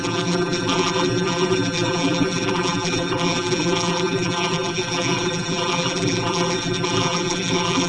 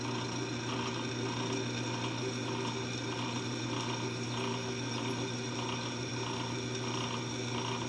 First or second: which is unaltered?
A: second